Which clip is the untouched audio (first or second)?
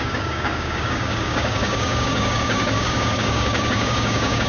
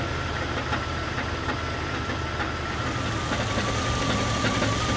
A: second